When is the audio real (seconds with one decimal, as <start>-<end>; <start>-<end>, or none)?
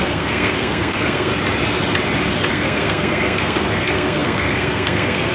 1.3-2.5